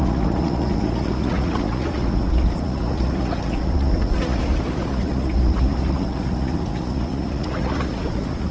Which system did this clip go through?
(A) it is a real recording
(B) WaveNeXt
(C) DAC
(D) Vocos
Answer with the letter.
D